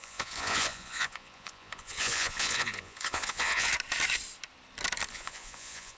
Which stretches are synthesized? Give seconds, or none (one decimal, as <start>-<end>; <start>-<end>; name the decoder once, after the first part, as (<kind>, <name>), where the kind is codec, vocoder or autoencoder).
0.0-3.7 (vocoder, Vocos); 5.1-6.0